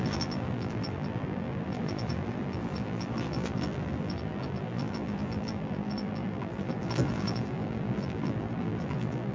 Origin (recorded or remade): remade